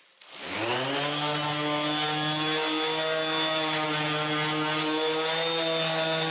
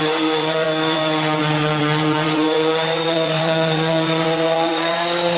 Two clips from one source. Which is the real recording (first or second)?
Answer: first